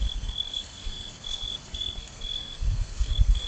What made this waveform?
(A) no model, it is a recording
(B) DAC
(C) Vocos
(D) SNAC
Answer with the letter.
D